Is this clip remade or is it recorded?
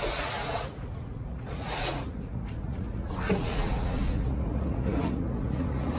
remade